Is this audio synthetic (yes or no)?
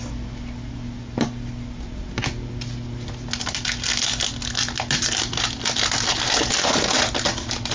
no